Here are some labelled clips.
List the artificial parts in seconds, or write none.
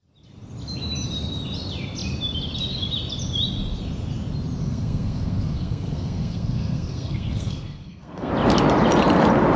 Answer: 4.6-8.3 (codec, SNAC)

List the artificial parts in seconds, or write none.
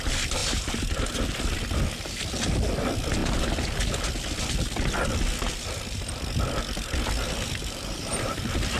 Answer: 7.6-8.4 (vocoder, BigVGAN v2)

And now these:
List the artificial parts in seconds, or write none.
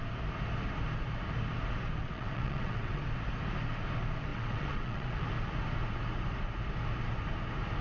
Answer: 2.0-3.0 (vocoder, WaveNeXt); 4.3-5.2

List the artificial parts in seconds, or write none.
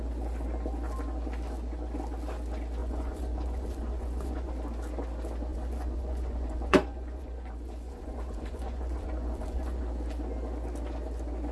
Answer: 2.8-4.5 (vocoder, Vocos); 5.5-9.8